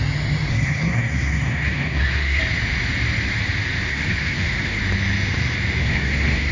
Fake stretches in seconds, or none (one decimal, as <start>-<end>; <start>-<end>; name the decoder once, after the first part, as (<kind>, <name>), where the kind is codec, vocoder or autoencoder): 0.5-2.4 (codec, SNAC); 3.9-4.8; 5.8-6.5